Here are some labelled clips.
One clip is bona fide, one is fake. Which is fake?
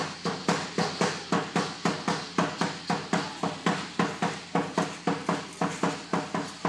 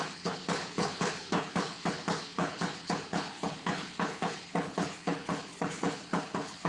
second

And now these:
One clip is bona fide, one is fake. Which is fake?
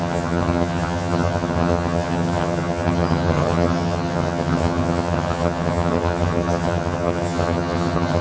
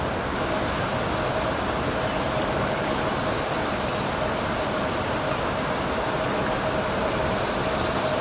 first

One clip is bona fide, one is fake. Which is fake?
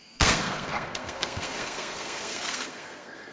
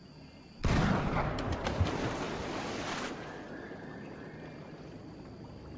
first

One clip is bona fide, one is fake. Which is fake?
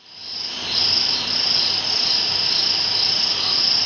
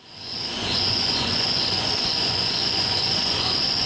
second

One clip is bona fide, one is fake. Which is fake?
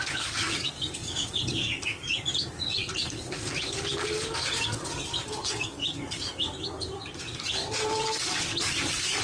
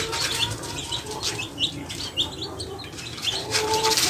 first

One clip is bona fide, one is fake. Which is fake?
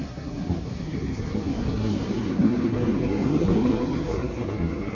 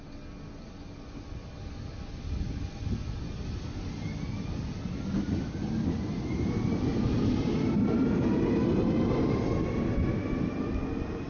first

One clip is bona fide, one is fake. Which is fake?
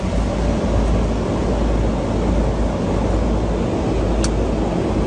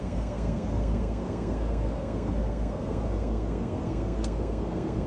second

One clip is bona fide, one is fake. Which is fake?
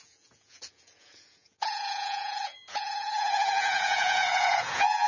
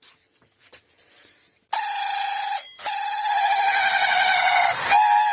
first